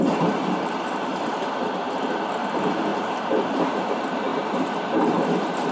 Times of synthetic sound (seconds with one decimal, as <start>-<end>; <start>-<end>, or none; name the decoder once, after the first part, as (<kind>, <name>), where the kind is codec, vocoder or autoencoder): 0.0-1.1 (vocoder, BigVGAN v2); 2.3-5.7

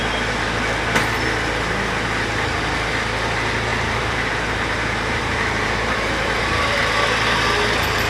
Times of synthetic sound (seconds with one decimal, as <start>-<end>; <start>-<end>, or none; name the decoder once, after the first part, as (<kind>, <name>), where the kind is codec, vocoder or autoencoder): 3.7-6.4 (vocoder, BigVGAN v2)

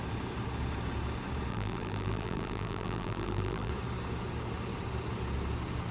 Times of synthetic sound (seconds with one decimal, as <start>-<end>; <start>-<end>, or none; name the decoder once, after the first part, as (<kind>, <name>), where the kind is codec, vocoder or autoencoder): 1.5-3.7 (vocoder, BigVGAN v2)

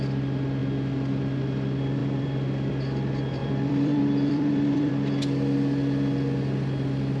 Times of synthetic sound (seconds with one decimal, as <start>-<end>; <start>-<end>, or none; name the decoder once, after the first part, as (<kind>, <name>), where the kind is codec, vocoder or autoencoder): 2.0-2.7 (vocoder, BigVGAN v2); 3.4-4.9

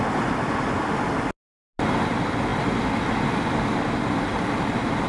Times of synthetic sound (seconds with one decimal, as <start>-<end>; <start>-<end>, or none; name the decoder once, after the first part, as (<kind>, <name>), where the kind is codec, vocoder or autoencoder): none

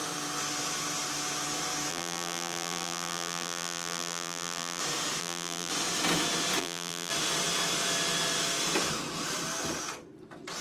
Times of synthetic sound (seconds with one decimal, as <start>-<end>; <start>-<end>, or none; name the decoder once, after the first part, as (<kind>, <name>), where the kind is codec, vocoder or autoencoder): 1.9-4.8 (vocoder, BigVGAN v2); 5.2-5.7; 6.6-7.1

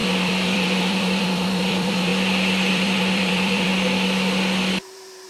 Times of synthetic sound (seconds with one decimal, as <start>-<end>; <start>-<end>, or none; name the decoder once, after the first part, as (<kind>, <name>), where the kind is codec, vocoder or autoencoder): 0.0-2.1 (vocoder, BigVGAN v2); 2.7-3.7; 4.8-5.3

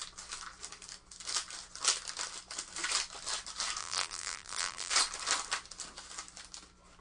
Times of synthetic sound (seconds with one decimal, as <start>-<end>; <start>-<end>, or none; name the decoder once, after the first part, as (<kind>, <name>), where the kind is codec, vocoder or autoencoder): 3.8-4.9 (vocoder, BigVGAN v2)